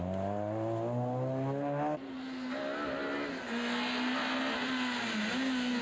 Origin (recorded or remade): recorded